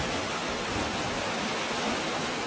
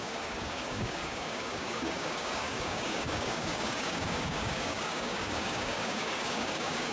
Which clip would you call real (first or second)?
first